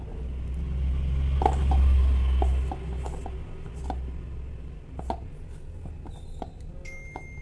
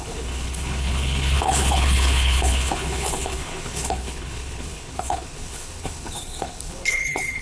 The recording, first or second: first